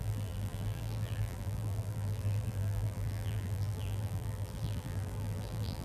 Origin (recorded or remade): remade